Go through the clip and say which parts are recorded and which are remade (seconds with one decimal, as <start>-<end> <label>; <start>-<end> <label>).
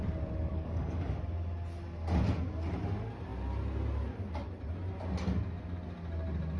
0.0-0.5 recorded; 0.5-1.2 remade; 1.2-6.6 recorded